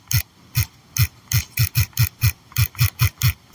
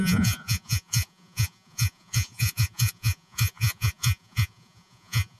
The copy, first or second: second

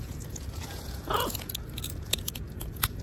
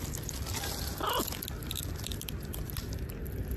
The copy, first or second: first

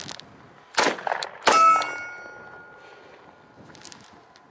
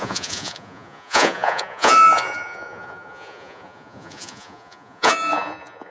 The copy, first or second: second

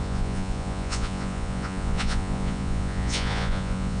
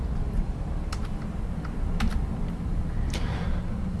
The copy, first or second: first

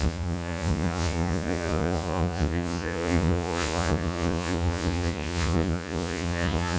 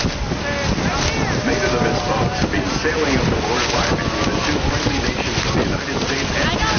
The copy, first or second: first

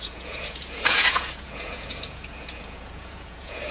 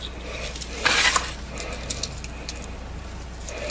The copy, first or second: first